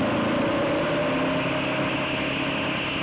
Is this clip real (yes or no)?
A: yes